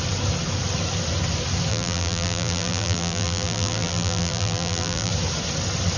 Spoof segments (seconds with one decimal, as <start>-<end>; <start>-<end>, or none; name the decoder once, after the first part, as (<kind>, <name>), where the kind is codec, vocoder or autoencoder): 1.7-5.1 (vocoder, BigVGAN v2)